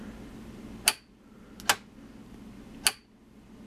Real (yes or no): yes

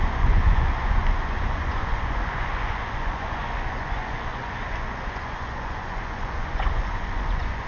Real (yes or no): no